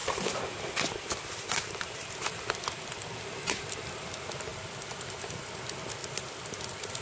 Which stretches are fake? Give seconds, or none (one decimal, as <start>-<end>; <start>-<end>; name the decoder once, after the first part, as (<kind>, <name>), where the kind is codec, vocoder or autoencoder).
4.5-5.6 (vocoder, BigVGAN v2); 6.0-7.0